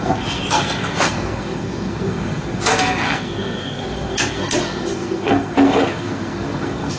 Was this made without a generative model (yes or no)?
no